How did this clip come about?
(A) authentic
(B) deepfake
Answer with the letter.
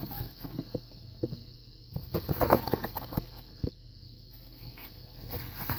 B